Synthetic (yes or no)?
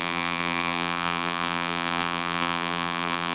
yes